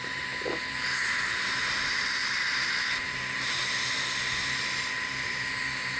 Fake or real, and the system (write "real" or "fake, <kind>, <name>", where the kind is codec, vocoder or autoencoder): real